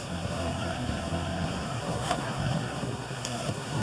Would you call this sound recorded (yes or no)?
no